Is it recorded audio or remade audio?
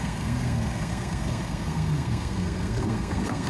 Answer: remade